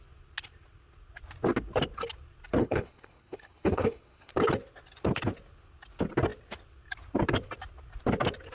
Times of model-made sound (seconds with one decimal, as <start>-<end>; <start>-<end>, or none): 2.6-4.3